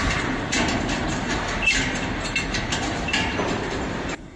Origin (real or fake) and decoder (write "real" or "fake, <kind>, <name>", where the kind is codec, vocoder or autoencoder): fake, vocoder, BigVGAN v2